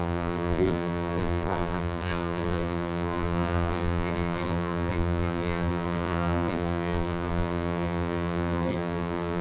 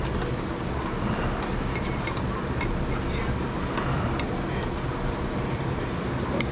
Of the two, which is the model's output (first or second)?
first